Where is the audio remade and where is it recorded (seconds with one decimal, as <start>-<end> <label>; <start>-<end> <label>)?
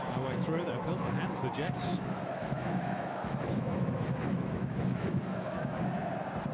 0.0-0.7 remade; 0.7-1.9 recorded; 1.9-5.8 remade; 5.8-6.5 recorded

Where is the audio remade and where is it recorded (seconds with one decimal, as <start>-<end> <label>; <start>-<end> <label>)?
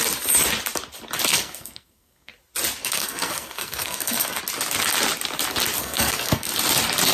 0.0-1.3 recorded; 1.3-2.3 remade; 2.3-2.8 recorded; 2.8-4.4 remade; 4.4-5.8 recorded; 5.8-6.5 remade; 6.5-7.1 recorded